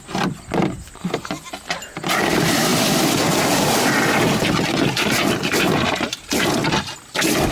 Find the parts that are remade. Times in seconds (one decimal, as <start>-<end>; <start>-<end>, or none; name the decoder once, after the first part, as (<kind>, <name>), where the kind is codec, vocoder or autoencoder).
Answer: none